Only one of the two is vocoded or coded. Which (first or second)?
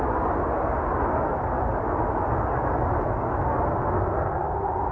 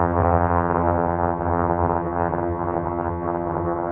second